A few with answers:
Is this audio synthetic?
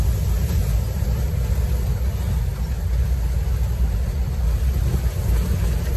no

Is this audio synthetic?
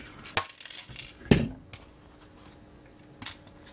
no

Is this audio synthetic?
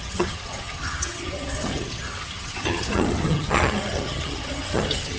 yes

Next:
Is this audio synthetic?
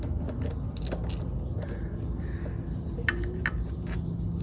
no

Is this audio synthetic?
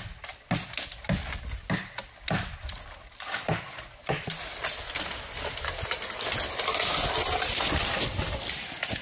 no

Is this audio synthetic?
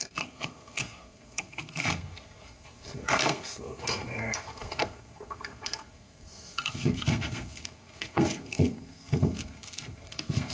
yes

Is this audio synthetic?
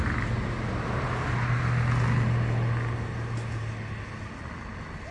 no